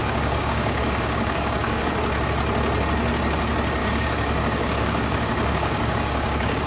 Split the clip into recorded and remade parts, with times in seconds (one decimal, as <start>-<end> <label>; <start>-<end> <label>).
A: 0.0-1.9 remade; 1.9-3.8 recorded; 3.8-6.7 remade